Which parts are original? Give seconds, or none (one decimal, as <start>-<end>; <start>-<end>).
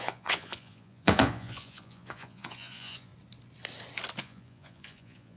3.1-4.2